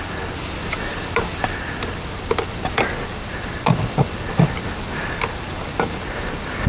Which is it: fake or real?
real